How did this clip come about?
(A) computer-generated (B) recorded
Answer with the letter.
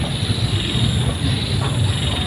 B